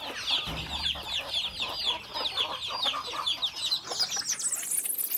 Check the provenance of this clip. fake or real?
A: real